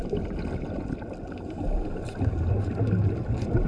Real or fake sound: real